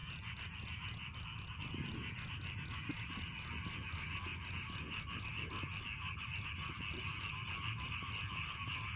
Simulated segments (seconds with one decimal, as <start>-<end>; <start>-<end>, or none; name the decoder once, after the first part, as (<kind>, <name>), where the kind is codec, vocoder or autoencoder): none